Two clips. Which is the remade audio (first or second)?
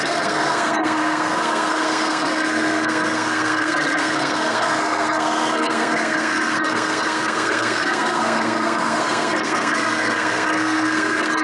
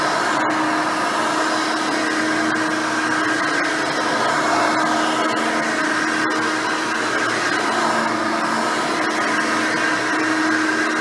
first